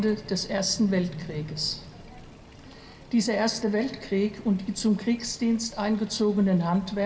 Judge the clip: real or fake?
real